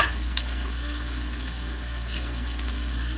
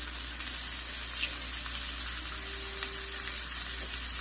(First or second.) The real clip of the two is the second